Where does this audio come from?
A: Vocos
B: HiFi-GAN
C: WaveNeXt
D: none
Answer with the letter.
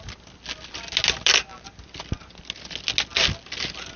D